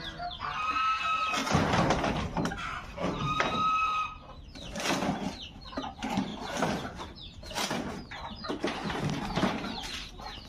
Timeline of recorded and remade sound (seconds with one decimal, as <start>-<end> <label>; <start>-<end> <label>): 0.0-1.4 recorded; 1.4-2.5 remade; 2.5-2.9 recorded; 2.9-4.4 remade; 4.4-6.3 recorded; 6.3-7.0 remade; 7.0-10.5 recorded